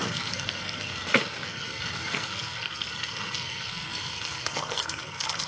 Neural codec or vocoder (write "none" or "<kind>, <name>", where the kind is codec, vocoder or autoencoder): codec, SNAC